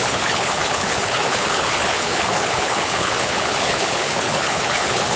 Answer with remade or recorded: remade